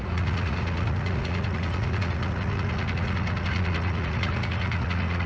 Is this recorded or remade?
remade